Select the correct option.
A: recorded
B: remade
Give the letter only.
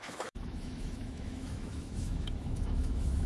B